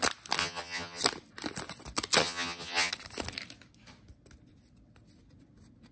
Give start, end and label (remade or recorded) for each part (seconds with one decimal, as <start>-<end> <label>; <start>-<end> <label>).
0.0-0.4 recorded; 0.4-1.0 remade; 1.0-2.2 recorded; 2.2-2.9 remade; 2.9-5.9 recorded